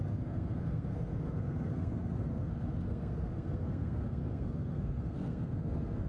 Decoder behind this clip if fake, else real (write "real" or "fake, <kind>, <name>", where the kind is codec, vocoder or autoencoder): fake, codec, SNAC